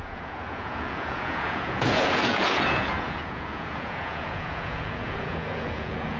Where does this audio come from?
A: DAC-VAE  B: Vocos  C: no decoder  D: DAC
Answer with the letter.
B